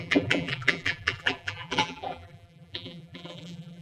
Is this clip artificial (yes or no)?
yes